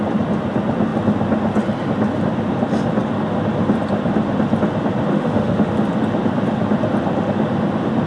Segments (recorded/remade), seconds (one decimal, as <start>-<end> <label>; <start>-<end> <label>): 0.0-5.1 recorded; 5.1-5.7 remade; 5.7-8.1 recorded